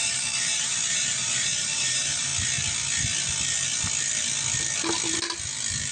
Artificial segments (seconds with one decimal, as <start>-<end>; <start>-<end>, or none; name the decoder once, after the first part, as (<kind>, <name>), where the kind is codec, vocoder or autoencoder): 0.0-2.3 (vocoder, BigVGAN v2)